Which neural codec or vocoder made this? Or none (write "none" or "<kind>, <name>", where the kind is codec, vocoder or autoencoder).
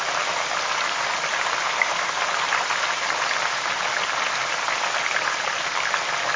none